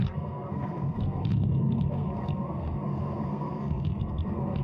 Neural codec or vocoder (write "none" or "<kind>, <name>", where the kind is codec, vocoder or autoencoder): codec, SNAC